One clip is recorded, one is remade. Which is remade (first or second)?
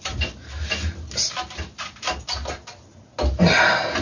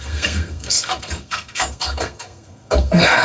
second